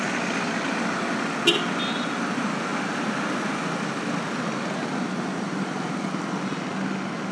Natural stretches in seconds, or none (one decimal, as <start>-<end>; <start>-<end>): 0.0-7.3